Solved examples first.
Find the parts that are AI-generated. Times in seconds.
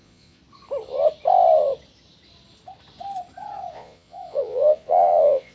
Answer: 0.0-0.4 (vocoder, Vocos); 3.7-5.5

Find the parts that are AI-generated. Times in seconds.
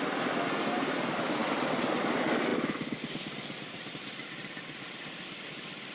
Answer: 1.4-2.0 (vocoder, BigVGAN v2); 2.5-3.9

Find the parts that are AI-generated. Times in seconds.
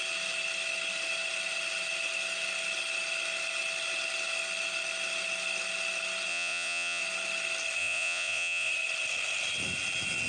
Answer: 6.3-7.0 (vocoder, Vocos); 7.8-8.7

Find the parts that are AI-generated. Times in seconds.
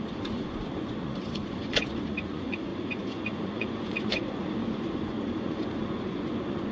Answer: 0.0-6.7 (vocoder, Vocos)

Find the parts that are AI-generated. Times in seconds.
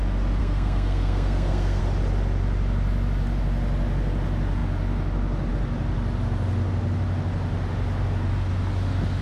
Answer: 0.4-1.8 (codec, SNAC)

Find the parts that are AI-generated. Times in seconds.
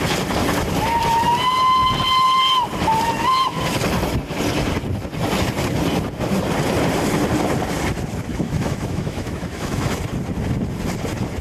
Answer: 8.3-10.0 (autoencoder, DAC-VAE)